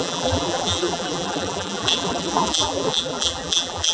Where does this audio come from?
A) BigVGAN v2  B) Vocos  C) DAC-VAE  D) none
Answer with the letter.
A